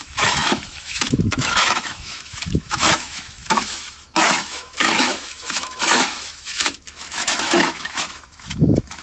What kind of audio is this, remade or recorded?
remade